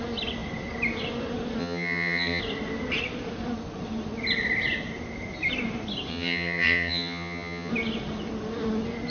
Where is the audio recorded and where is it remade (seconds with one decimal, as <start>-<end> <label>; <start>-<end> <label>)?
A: 0.0-1.6 recorded; 1.6-2.4 remade; 2.4-6.1 recorded; 6.1-7.7 remade; 7.7-9.1 recorded

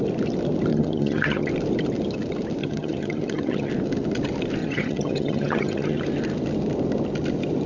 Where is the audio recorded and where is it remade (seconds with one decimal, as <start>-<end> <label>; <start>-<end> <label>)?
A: 0.0-0.7 recorded; 0.7-1.5 remade; 1.5-2.6 recorded; 2.6-3.7 remade; 3.7-4.6 recorded; 4.6-6.0 remade; 6.0-7.7 recorded

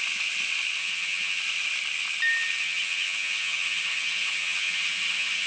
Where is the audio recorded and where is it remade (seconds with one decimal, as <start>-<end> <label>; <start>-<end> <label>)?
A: 0.0-0.8 recorded; 0.8-1.4 remade; 1.4-2.6 recorded; 2.6-5.5 remade